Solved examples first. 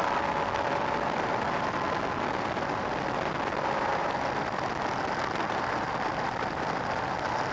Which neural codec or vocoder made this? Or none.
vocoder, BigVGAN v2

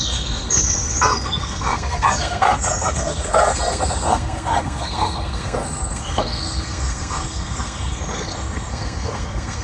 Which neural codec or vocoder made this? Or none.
codec, SNAC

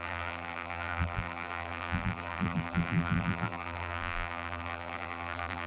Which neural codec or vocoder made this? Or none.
vocoder, BigVGAN v2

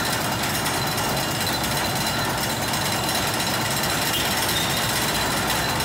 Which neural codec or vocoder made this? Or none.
none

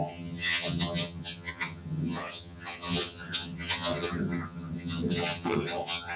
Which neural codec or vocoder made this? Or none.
vocoder, HiFi-GAN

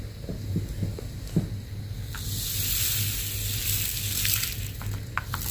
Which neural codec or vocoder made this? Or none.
none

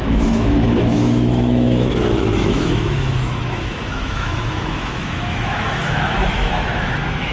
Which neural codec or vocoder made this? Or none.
autoencoder, DAC-VAE